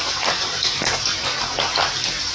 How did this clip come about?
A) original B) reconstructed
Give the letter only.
A